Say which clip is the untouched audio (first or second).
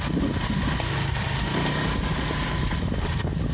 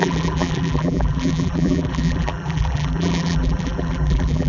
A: first